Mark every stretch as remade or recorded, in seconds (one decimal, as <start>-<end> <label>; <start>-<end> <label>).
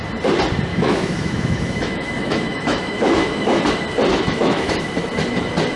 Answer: 0.0-0.7 recorded; 0.7-3.6 remade; 3.6-4.1 recorded; 4.1-4.8 remade; 4.8-5.8 recorded